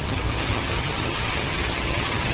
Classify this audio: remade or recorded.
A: remade